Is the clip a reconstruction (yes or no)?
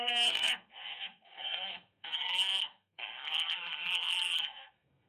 yes